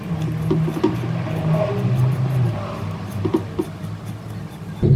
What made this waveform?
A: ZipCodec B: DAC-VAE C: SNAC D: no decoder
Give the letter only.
D